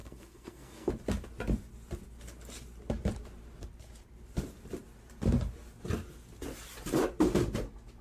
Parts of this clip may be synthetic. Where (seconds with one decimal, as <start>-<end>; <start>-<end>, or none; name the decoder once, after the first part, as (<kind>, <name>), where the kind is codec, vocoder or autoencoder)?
0.0-0.9 (codec, SNAC)